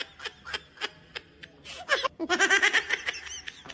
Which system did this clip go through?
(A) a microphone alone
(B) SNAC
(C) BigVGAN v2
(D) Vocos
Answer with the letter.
A